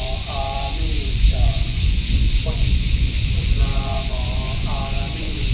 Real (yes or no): no